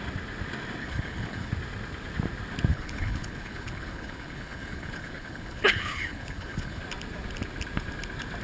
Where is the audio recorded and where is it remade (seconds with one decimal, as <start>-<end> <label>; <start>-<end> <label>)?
0.0-0.8 recorded; 0.8-1.5 remade; 1.5-2.7 recorded; 2.7-6.8 remade; 6.8-8.4 recorded